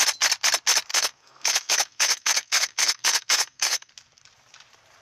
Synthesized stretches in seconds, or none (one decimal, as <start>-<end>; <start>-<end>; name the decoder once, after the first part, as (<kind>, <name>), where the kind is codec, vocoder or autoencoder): 0.9-3.9 (codec, SNAC)